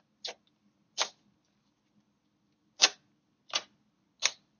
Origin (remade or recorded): recorded